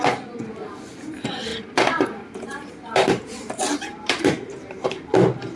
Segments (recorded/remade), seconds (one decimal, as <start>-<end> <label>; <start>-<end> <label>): 0.0-1.5 recorded; 1.5-4.9 remade; 4.9-5.6 recorded